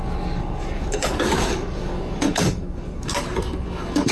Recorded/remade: remade